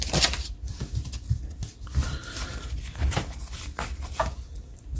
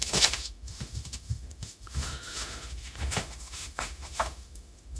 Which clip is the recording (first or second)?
first